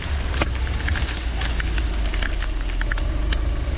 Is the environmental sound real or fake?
real